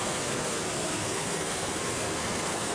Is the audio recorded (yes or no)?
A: no